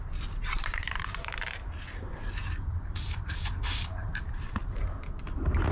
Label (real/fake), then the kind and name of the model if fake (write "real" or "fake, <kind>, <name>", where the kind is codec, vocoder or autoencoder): fake, vocoder, BigVGAN v2